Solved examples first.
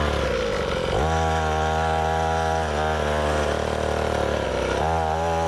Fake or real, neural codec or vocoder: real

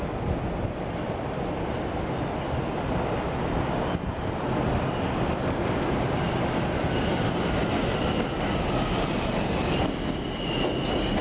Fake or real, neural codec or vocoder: real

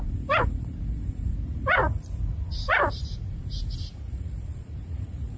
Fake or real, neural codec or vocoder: fake, vocoder, Vocos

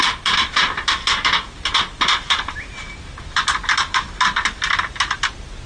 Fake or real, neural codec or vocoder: real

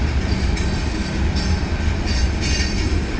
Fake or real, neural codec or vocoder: real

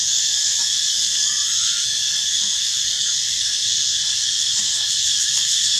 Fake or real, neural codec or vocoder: fake, codec, SNAC